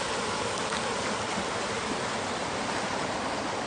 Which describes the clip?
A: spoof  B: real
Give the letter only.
B